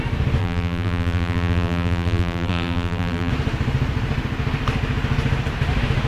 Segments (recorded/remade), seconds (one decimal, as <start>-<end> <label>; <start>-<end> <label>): 0.0-0.4 recorded; 0.4-3.3 remade; 3.3-6.1 recorded